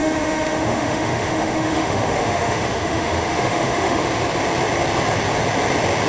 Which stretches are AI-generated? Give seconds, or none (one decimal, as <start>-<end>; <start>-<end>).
0.0-4.0